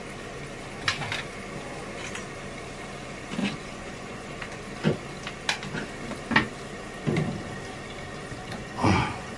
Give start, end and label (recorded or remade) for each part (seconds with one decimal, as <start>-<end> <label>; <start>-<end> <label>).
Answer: 0.0-3.4 recorded; 3.4-4.6 remade; 4.6-8.2 recorded; 8.2-9.4 remade

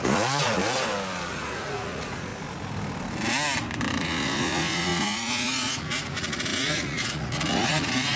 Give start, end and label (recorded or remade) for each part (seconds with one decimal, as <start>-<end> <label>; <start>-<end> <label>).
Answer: 0.0-0.6 remade; 0.6-1.3 recorded; 1.3-2.3 remade; 2.3-3.9 recorded; 3.9-8.2 remade

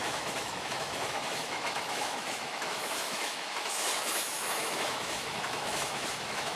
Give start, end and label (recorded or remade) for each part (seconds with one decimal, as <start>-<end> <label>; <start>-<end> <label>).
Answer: 0.0-6.6 remade

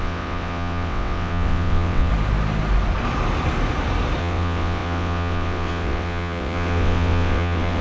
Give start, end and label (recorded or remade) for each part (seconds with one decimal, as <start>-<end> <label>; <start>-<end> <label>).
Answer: 0.0-2.1 remade; 2.1-4.2 recorded; 4.2-7.8 remade

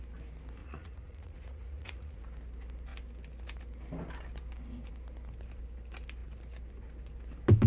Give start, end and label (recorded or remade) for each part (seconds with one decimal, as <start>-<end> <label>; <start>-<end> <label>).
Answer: 0.0-0.6 recorded; 0.6-2.2 remade; 2.2-7.7 recorded

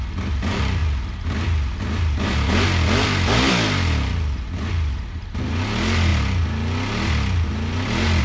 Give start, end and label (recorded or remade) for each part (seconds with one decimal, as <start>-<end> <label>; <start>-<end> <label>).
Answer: 0.0-8.2 recorded

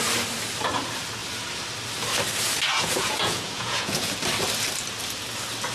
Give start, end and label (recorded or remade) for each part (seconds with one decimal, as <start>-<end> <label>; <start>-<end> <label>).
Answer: 0.0-2.7 recorded; 2.7-4.1 remade; 4.1-5.7 recorded

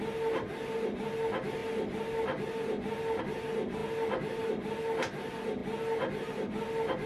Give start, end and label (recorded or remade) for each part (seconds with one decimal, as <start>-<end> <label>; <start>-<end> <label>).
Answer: 0.0-5.6 remade; 5.6-6.3 recorded; 6.3-7.1 remade